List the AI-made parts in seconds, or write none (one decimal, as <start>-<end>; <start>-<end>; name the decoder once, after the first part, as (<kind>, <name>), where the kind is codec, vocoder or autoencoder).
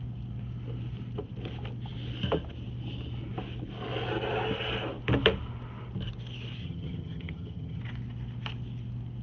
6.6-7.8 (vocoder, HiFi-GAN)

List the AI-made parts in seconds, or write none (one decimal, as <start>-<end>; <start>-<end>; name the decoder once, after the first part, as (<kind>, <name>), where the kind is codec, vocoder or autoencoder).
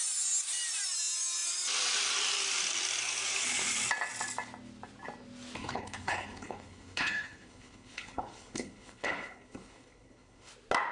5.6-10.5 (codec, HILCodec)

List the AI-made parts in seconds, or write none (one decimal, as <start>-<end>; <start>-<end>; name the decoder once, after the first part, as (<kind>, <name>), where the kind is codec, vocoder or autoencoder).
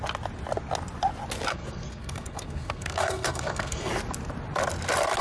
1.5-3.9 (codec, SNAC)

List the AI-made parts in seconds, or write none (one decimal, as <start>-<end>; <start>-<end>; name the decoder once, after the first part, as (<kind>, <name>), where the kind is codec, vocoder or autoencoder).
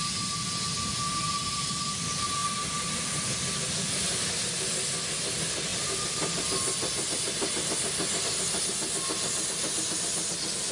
none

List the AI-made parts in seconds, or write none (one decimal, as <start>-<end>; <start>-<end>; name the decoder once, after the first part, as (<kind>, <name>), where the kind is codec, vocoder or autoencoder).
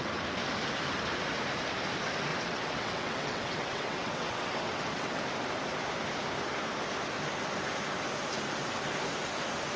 2.3-5.2 (vocoder, WaveNeXt)